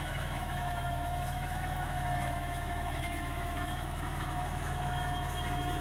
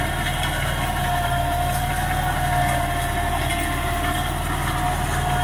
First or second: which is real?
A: second